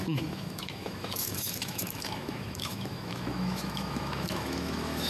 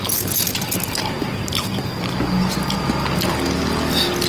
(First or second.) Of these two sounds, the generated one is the first